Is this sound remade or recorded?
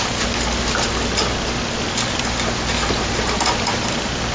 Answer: recorded